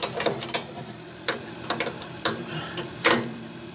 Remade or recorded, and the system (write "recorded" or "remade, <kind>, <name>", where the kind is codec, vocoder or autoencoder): remade, vocoder, BigVGAN v2